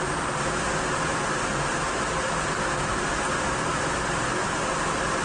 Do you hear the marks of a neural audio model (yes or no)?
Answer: no